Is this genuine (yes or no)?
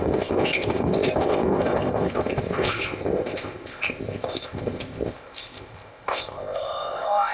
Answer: no